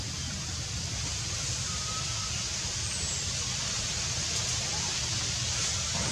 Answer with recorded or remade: recorded